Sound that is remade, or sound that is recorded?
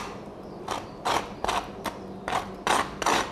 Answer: recorded